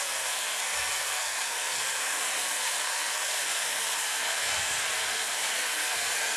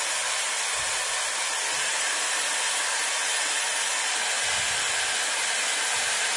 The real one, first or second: second